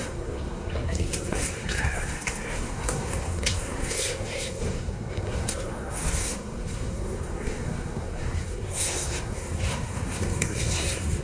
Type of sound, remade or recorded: remade